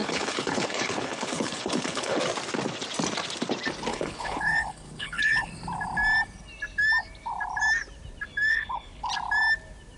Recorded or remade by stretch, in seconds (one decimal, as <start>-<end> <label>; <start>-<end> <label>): 0.0-2.2 remade; 2.2-3.9 recorded; 3.9-5.5 remade; 5.5-8.5 recorded; 8.5-9.0 remade; 9.0-10.0 recorded